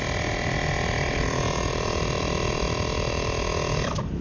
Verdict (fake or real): fake